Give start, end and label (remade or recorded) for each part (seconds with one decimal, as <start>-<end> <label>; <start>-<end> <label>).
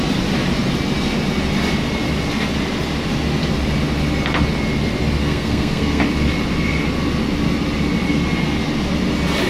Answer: 0.0-5.2 recorded; 5.2-6.0 remade; 6.0-9.5 recorded